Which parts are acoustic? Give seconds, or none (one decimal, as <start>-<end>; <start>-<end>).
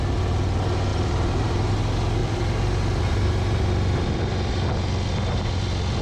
0.0-0.9; 1.8-2.2; 3.6-6.0